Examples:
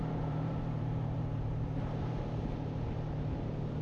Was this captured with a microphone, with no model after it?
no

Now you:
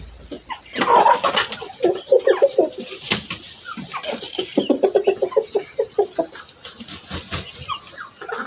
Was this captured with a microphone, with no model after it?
yes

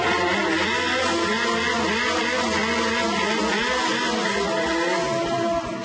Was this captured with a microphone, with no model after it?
yes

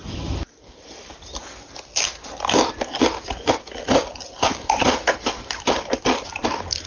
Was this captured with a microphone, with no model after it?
yes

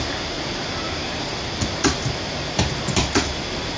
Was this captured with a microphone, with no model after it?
yes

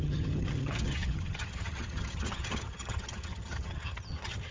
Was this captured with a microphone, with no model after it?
no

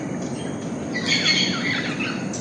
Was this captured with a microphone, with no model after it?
yes